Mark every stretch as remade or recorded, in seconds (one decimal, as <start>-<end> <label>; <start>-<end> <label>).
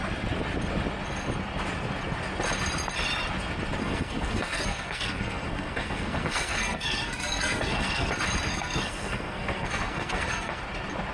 0.0-3.8 recorded; 3.8-8.1 remade; 8.1-8.5 recorded; 8.5-10.6 remade; 10.6-11.1 recorded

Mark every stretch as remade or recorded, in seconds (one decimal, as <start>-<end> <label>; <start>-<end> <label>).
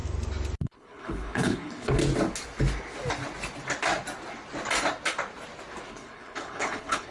0.0-0.6 recorded; 0.6-2.0 remade; 2.0-5.9 recorded; 5.9-7.1 remade